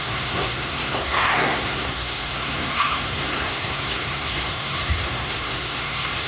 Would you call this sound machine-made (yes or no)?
yes